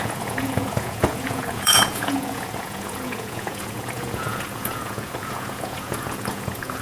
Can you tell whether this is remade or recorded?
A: remade